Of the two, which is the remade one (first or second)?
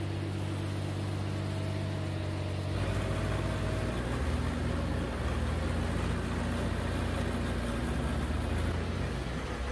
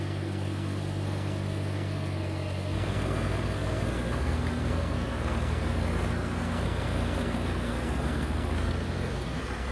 second